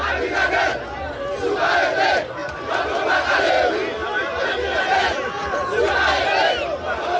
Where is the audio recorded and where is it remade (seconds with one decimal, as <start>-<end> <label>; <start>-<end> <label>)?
0.0-7.2 recorded